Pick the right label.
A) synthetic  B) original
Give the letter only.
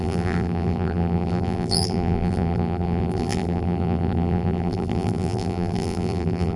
A